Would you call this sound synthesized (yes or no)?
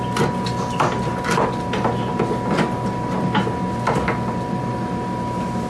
no